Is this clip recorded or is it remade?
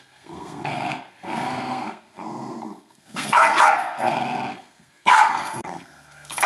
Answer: remade